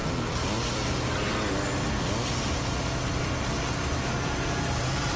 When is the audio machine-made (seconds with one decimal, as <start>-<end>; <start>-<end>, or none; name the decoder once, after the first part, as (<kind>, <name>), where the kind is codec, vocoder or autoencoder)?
none